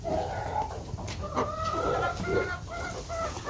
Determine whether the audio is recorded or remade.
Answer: recorded